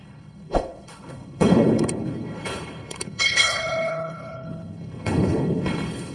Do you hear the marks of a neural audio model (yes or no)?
yes